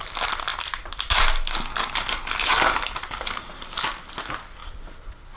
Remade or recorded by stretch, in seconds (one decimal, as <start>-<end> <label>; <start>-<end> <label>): 0.0-5.4 recorded